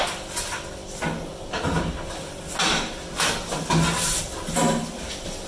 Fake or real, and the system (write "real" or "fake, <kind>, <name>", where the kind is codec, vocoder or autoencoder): real